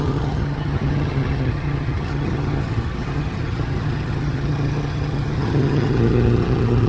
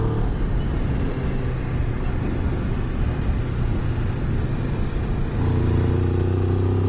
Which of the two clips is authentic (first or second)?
second